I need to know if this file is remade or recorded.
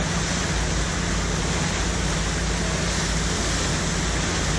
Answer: recorded